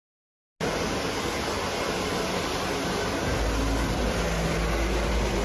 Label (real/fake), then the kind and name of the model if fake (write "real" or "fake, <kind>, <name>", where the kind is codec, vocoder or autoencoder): real